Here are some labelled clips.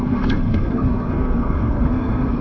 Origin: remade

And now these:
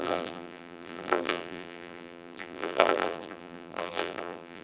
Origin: remade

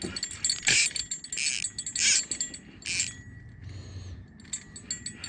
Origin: recorded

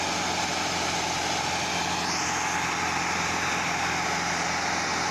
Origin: recorded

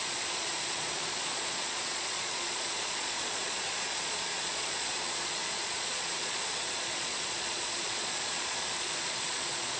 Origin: remade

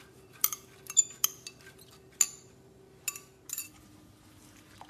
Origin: recorded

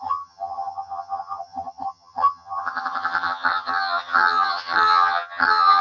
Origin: remade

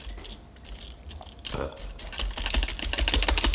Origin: recorded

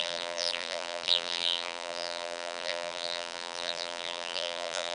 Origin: remade